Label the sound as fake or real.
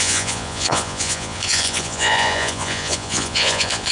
fake